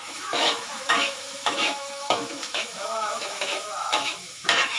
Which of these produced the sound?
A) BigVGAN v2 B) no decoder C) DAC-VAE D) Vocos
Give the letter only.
C